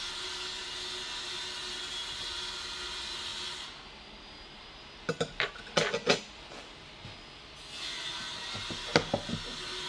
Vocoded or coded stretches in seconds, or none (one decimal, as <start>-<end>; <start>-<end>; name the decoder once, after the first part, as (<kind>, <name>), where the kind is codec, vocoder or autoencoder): none